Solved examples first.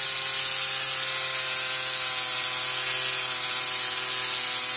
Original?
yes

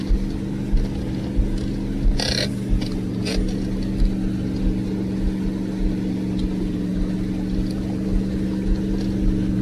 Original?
yes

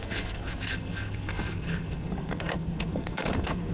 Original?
no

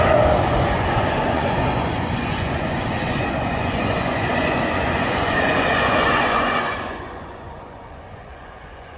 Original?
no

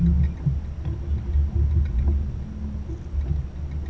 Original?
yes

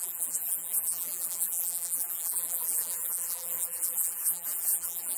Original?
no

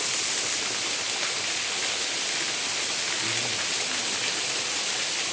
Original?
yes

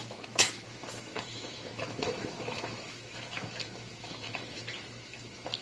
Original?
no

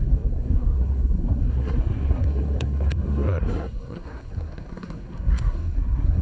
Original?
no